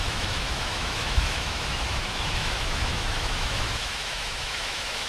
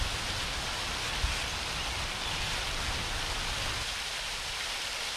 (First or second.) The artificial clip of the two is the first